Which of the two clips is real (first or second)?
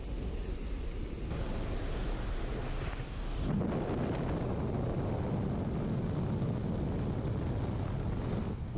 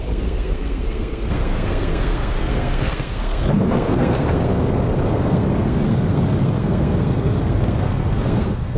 first